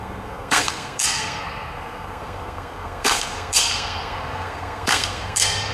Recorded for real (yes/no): no